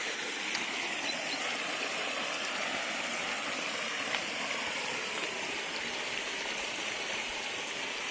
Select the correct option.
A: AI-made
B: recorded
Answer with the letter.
B